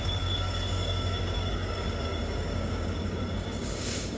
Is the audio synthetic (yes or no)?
yes